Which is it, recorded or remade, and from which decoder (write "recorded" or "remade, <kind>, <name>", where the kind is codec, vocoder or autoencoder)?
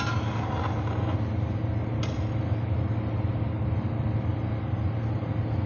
recorded